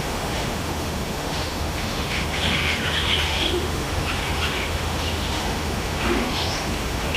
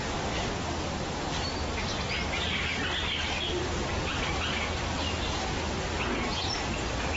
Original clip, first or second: second